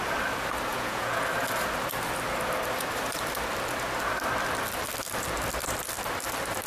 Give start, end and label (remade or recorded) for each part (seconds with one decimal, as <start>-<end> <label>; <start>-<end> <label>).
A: 0.0-0.7 recorded; 0.7-1.2 remade; 1.2-6.7 recorded